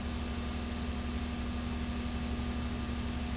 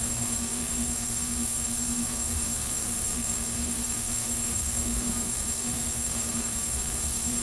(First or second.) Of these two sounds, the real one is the first